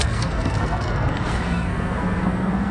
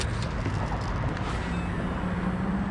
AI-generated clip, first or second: first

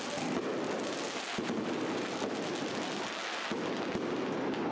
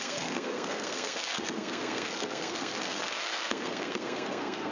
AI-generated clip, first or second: second